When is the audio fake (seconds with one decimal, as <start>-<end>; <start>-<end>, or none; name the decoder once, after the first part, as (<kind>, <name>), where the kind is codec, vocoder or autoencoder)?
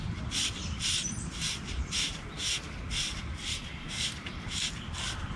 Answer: 1.0-2.3 (vocoder, BigVGAN v2); 3.6-4.1